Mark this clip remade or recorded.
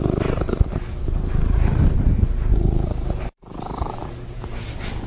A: remade